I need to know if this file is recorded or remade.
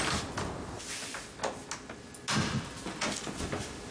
recorded